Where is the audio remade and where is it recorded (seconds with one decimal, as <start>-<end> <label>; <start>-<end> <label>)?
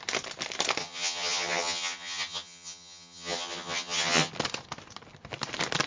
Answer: 0.0-0.8 recorded; 0.8-4.3 remade; 4.3-5.9 recorded